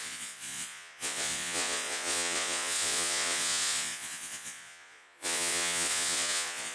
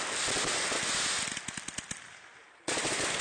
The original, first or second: second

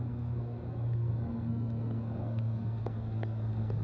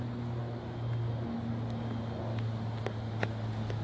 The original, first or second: second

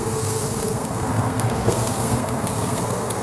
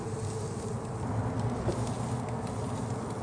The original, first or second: second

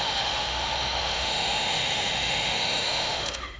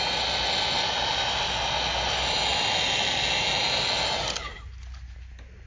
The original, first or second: second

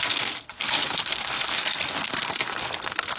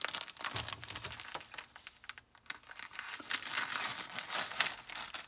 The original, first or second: second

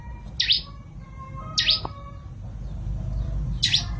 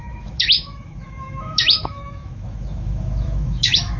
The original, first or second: first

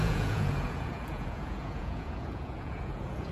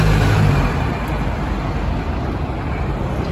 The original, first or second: second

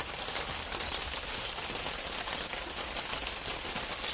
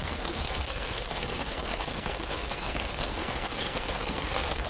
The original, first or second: first